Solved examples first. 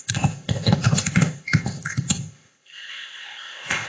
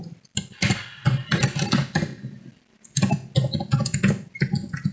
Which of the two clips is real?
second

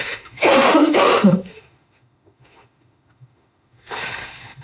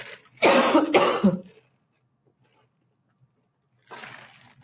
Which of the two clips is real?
second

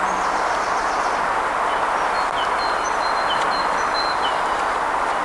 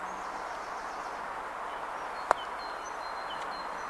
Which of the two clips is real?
second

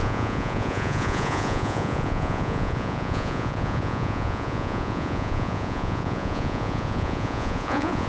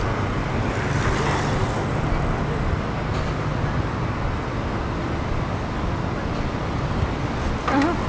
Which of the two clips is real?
second